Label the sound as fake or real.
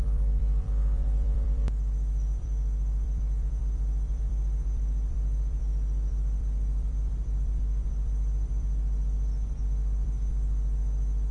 fake